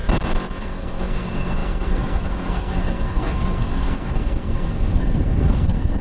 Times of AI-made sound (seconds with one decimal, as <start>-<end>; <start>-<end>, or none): 0.6-6.0